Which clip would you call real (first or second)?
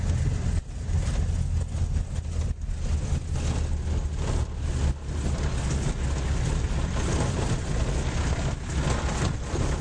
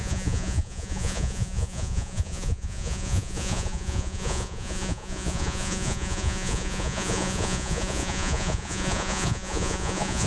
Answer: first